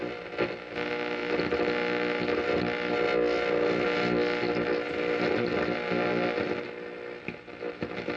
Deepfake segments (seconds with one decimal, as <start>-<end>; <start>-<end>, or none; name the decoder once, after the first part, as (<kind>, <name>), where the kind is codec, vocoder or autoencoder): none